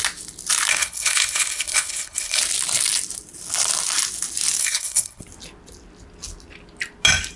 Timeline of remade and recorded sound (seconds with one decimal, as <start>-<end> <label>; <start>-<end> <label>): 0.0-0.7 recorded; 0.7-2.4 remade; 2.4-4.6 recorded; 4.6-5.2 remade; 5.2-7.4 recorded